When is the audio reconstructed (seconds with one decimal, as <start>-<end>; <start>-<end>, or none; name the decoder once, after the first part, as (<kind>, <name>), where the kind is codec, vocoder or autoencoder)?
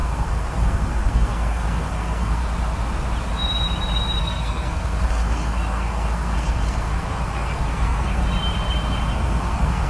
0.0-2.4 (codec, SNAC); 4.2-8.2; 9.1-9.9